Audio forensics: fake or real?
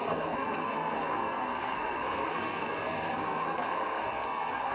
fake